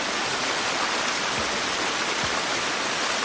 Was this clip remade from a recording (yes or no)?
no